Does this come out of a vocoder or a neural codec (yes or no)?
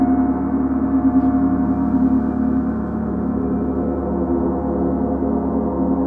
no